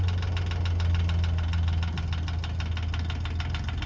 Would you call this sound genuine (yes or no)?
yes